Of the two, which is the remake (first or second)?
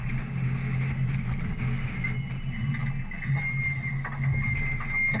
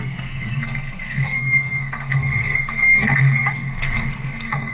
second